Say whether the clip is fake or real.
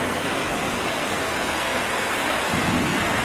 fake